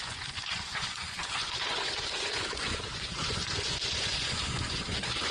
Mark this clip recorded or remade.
remade